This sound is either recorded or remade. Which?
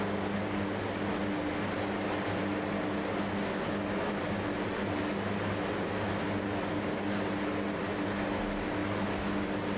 recorded